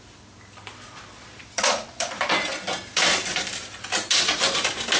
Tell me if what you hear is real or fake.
fake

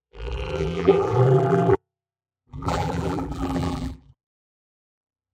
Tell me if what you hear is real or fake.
fake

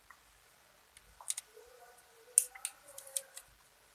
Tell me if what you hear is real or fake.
real